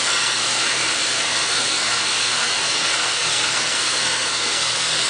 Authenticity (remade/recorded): remade